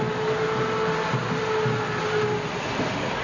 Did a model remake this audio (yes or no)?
no